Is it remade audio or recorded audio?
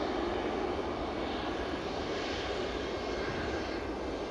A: recorded